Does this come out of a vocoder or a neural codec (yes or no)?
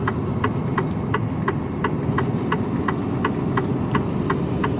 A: no